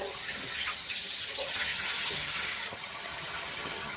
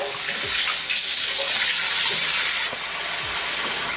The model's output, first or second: first